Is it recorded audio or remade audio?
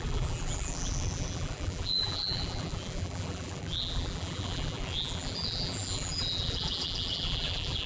remade